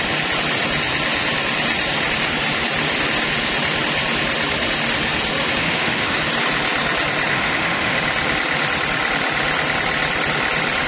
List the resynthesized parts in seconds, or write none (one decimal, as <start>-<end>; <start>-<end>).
5.6-6.2; 7.3-8.0